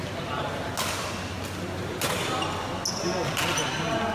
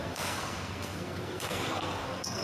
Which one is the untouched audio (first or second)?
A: first